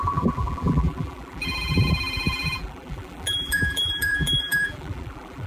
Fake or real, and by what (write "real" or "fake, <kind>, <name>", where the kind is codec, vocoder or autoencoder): fake, vocoder, BigVGAN v2